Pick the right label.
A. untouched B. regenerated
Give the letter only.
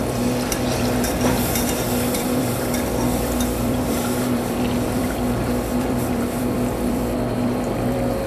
B